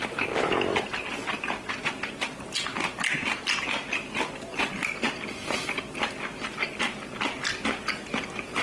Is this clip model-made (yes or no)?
no